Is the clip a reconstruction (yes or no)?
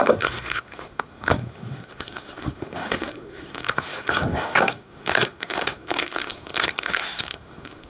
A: yes